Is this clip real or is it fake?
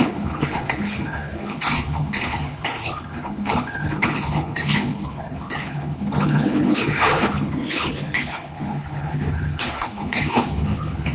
fake